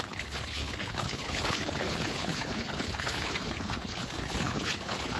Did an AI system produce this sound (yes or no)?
yes